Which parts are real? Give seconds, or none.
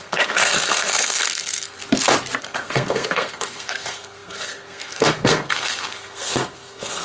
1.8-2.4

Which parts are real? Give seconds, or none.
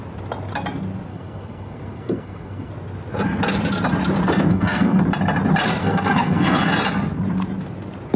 0.0-1.1; 2.7-4.5; 5.0-5.8; 6.7-8.2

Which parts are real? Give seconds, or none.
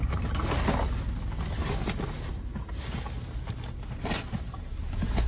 0.0-5.3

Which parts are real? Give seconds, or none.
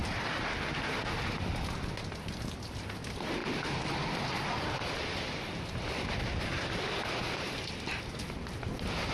0.0-9.1